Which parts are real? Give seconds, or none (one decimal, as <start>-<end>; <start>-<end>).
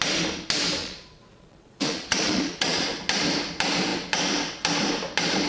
0.0-0.8; 2.8-5.5